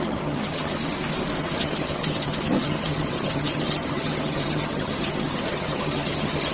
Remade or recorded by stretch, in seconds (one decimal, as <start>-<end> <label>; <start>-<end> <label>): 0.0-0.8 remade; 0.8-1.4 recorded; 1.4-6.5 remade